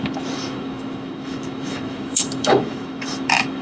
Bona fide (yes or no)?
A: no